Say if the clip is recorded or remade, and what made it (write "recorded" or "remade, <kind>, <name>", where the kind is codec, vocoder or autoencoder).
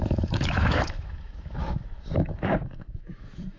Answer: remade, autoencoder, DAC-VAE